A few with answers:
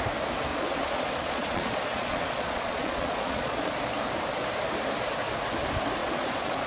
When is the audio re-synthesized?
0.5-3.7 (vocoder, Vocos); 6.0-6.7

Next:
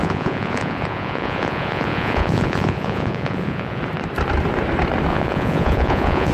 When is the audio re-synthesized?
0.0-3.8 (vocoder, Vocos); 5.1-6.3

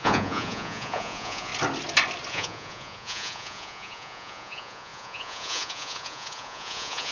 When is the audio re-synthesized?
0.0-1.5 (vocoder, Vocos); 2.3-7.1

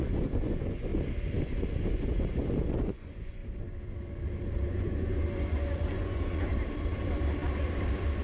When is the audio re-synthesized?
0.0-0.9 (vocoder, Vocos); 1.4-3.4; 4.7-6.5

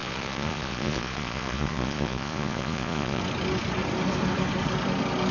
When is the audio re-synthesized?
0.0-3.2 (vocoder, Vocos)

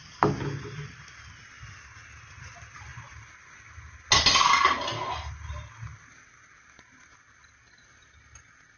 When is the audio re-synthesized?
none

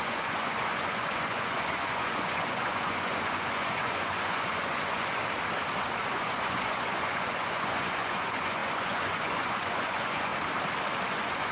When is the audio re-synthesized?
0.0-5.2 (vocoder, Vocos); 6.0-10.3; 11.1-11.5

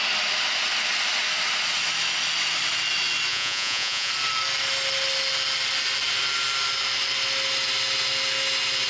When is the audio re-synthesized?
3.3-4.1 (vocoder, Vocos)